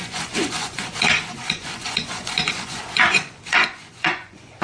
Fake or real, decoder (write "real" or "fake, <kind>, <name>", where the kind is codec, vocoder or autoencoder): fake, vocoder, Vocos